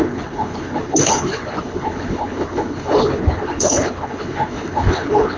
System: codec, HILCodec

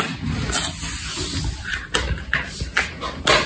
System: none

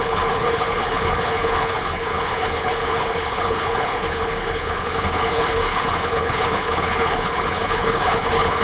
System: codec, HILCodec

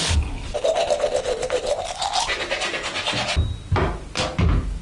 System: none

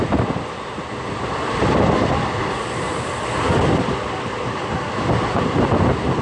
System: none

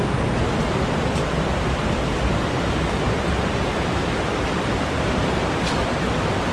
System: none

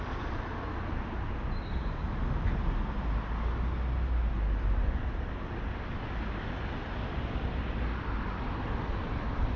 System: none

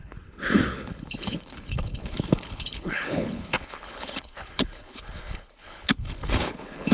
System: codec, HILCodec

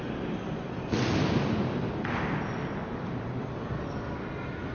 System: none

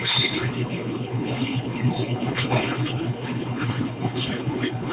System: codec, HILCodec